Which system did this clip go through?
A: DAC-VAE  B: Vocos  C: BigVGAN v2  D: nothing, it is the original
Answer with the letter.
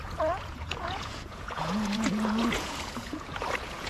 B